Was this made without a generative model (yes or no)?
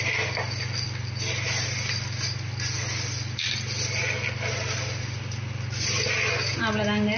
yes